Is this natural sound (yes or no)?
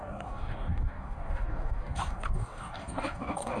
no